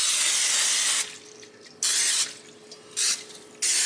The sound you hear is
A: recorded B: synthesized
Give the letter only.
A